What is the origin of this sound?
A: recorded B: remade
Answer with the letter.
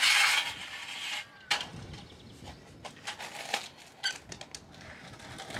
A